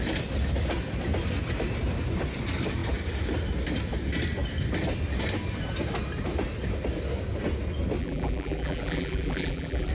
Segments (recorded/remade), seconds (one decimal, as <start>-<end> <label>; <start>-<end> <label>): 0.0-8.0 recorded; 8.0-9.9 remade